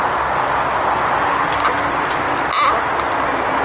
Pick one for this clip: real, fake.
real